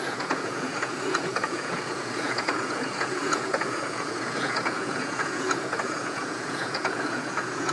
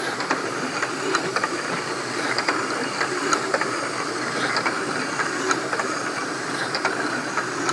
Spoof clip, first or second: first